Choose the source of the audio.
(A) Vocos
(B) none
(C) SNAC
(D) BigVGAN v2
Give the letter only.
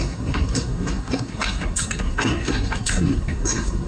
C